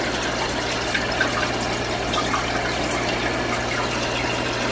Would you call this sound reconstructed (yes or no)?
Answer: no